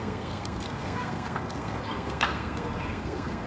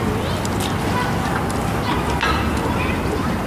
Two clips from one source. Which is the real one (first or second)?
second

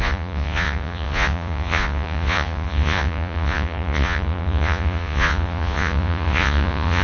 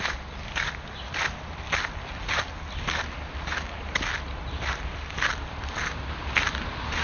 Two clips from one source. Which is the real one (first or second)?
second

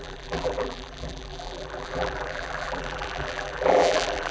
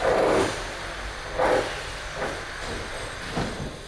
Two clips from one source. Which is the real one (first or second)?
second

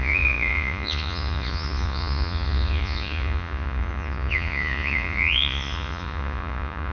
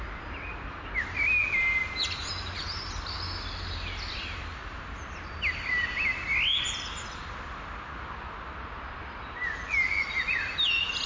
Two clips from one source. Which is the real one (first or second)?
second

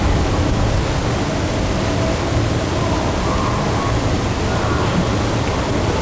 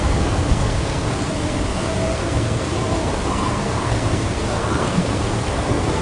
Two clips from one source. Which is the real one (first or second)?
first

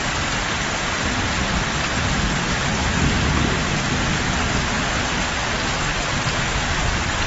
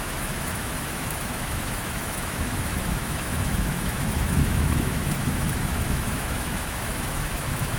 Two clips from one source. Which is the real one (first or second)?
first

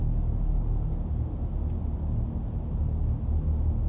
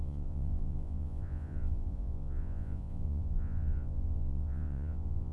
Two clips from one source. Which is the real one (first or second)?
first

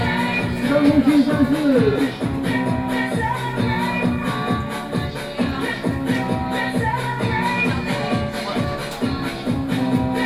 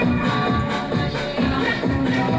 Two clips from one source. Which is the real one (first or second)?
first